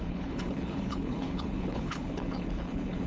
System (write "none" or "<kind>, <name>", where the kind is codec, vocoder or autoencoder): codec, HILCodec